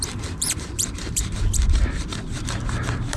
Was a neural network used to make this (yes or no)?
yes